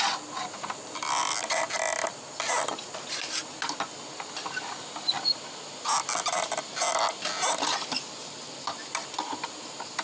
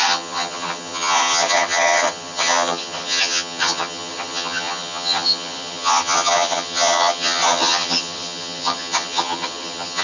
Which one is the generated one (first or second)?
second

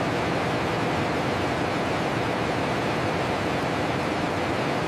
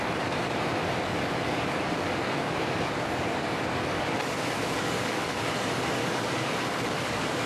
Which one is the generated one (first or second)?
second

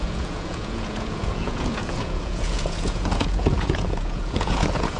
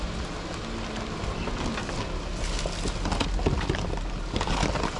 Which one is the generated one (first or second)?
first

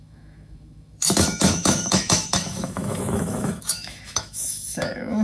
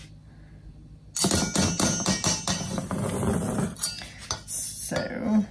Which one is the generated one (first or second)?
first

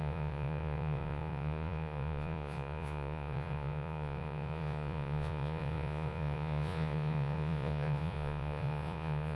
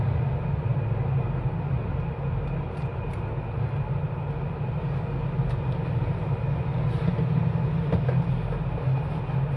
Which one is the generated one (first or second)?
first